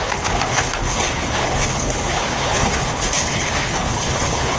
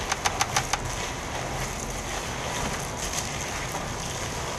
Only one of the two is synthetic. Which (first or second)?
first